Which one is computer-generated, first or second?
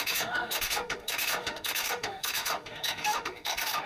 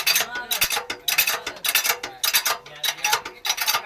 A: first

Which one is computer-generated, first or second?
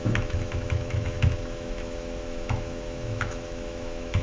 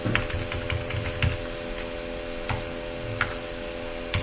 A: first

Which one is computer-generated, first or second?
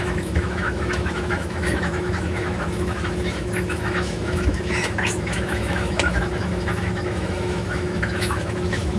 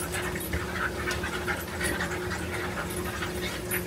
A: first